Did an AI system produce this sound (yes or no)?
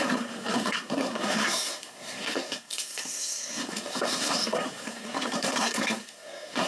yes